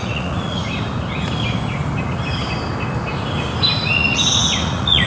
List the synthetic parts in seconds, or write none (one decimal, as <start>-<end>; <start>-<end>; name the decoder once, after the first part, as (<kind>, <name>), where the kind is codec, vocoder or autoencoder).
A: 0.0-0.7 (vocoder, Vocos); 3.8-5.1